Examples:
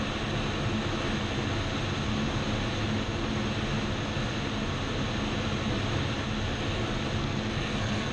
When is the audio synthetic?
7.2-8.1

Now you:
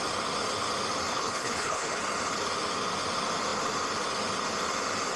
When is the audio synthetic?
1.1-2.0